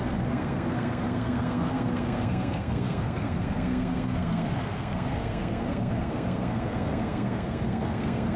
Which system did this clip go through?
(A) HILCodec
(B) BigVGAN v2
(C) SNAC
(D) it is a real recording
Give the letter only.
C